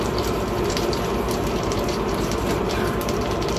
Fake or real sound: fake